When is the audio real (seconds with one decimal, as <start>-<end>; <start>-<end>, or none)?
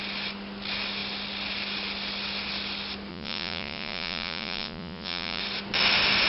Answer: 0.0-3.1; 5.4-6.3